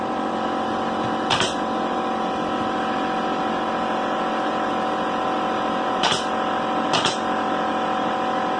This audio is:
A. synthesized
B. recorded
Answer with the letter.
B